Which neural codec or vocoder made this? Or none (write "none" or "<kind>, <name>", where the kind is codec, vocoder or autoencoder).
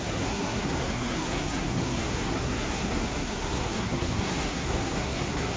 codec, SNAC